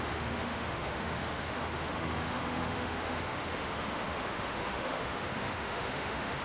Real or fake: fake